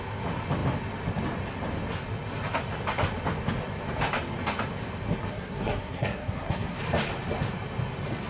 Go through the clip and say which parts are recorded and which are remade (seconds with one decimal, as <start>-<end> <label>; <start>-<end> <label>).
0.0-5.3 recorded; 5.3-6.8 remade; 6.8-8.3 recorded